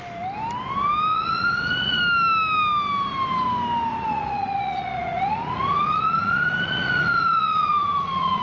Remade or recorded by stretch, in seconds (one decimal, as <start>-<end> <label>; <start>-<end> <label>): 0.0-1.1 recorded; 1.1-2.0 remade; 2.0-3.9 recorded; 3.9-8.4 remade